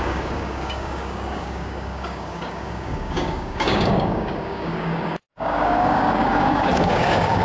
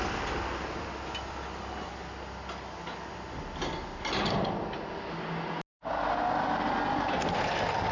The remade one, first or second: first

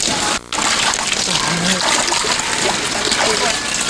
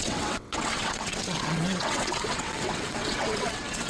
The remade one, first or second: second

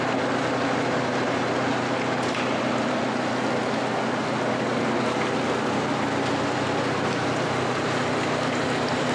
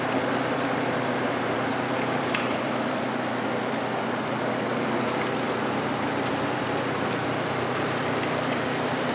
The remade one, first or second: second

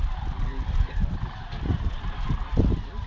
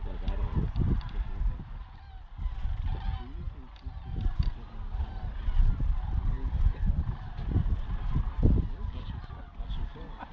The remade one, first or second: first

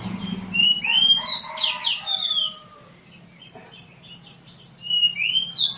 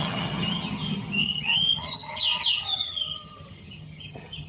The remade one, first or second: second